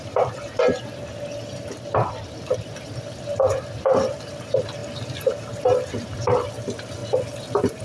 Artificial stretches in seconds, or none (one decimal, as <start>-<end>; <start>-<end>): none